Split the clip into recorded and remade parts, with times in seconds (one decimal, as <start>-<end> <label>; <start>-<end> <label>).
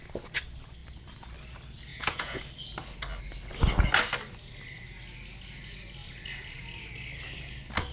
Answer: 0.0-1.9 recorded; 1.9-2.4 remade; 2.4-7.9 recorded